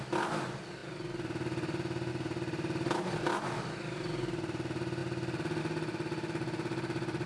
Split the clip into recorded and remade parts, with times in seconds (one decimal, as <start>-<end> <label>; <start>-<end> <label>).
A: 0.0-7.3 recorded